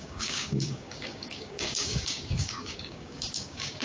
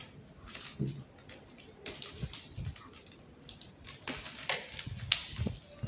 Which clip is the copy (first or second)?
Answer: first